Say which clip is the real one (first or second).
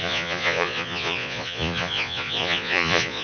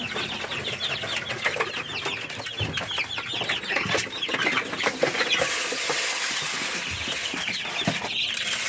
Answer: second